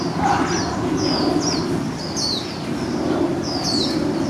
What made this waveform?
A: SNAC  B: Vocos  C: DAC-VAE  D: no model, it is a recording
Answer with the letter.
D